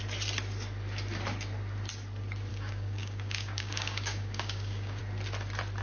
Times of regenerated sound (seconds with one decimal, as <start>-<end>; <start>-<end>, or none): 2.5-5.0